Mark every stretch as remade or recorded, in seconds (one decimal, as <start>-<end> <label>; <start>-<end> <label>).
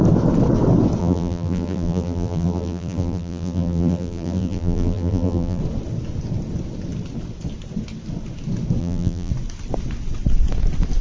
0.0-1.0 recorded; 1.0-5.6 remade; 5.6-8.8 recorded; 8.8-9.3 remade; 9.3-11.0 recorded